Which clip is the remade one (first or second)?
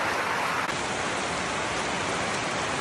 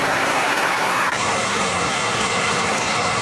second